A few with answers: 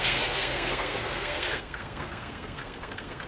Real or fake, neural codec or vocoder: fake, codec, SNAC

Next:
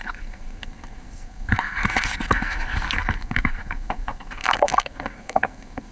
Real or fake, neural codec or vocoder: fake, codec, SNAC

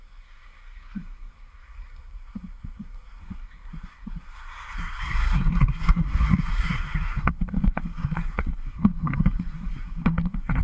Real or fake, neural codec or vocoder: fake, codec, SNAC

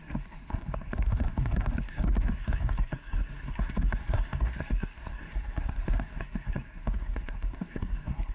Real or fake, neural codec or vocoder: fake, codec, SNAC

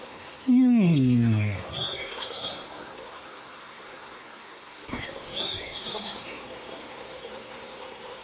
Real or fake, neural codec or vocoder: fake, codec, SNAC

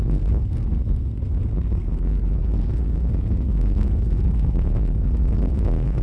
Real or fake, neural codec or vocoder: fake, codec, SNAC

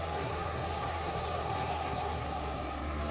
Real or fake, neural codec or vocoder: fake, codec, SNAC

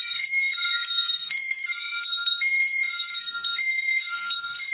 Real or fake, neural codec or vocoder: fake, codec, SNAC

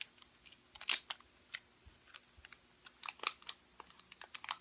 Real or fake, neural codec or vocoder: real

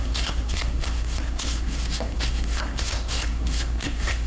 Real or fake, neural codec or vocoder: fake, codec, SNAC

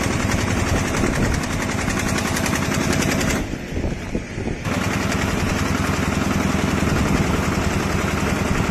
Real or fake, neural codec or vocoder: real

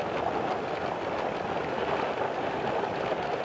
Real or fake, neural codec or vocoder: real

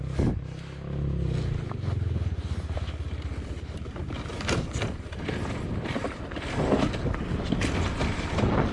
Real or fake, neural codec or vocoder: real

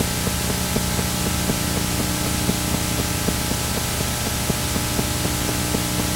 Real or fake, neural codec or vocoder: real